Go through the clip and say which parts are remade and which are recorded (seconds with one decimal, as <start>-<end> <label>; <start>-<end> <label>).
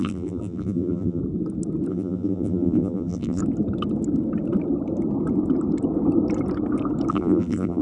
0.0-1.2 remade; 1.2-1.9 recorded; 1.9-3.4 remade; 3.4-7.1 recorded; 7.1-7.8 remade